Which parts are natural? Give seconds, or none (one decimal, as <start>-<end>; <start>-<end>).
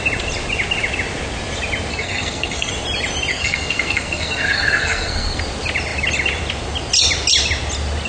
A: 0.0-1.9; 2.7-3.3; 5.4-8.1